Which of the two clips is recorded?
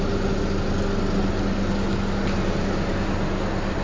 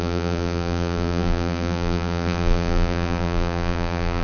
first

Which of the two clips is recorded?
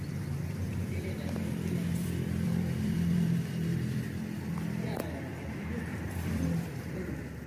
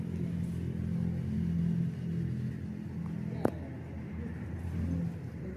second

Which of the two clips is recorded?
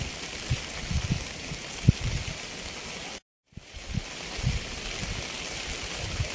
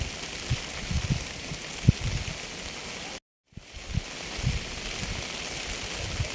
second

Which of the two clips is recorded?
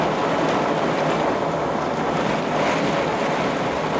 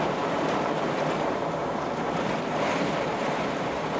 first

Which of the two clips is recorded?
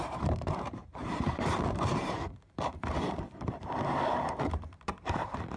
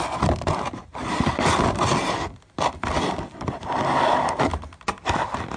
second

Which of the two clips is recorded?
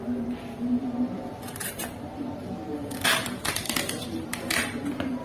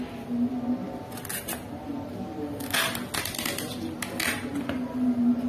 second